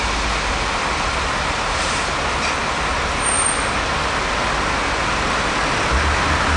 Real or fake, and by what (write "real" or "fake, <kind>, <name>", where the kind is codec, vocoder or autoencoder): real